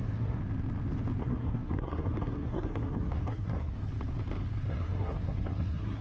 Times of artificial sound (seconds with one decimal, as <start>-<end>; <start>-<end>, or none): 0.0-0.4; 1.2-3.9; 4.7-6.0